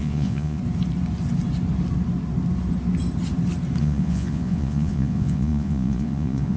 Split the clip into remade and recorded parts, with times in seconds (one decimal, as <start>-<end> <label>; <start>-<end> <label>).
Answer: 0.0-0.6 remade; 0.6-3.8 recorded; 3.8-6.6 remade